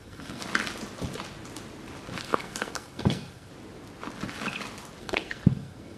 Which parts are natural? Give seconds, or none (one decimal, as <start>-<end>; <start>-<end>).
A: 0.4-2.2; 3.5-5.0